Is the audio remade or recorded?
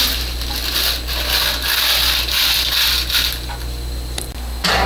recorded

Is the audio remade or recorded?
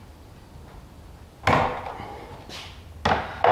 recorded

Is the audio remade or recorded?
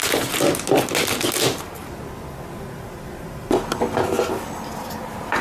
recorded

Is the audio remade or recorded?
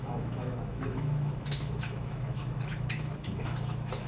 remade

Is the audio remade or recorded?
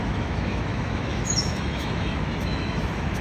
remade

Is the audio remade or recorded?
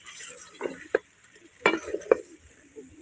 recorded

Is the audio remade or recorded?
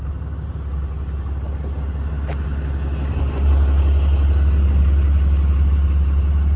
recorded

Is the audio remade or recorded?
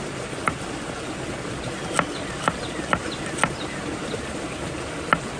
recorded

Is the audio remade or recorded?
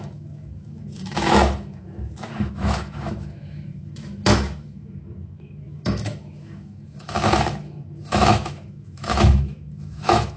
remade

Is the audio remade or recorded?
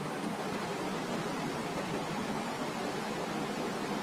recorded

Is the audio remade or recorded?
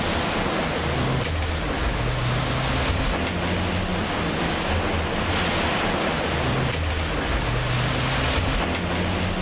recorded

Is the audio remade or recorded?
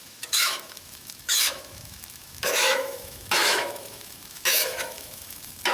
remade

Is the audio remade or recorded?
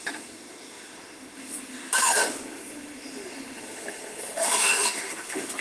remade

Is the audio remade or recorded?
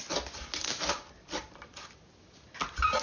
recorded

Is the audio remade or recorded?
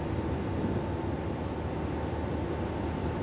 recorded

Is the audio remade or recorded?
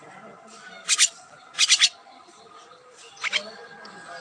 recorded